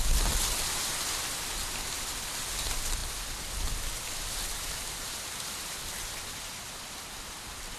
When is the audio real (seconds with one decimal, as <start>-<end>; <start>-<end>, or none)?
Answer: 0.0-7.8